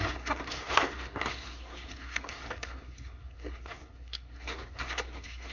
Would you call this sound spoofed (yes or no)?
yes